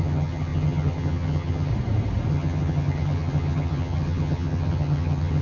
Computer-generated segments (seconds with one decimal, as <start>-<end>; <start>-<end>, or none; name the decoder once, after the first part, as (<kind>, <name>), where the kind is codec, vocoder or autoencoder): 0.0-1.7 (vocoder, HiFi-GAN); 2.3-5.4